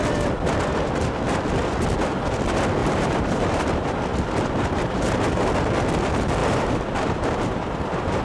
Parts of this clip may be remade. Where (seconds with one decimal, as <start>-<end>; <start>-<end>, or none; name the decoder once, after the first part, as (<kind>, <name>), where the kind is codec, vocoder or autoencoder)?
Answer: 2.8-3.6 (vocoder, BigVGAN v2); 6.4-8.2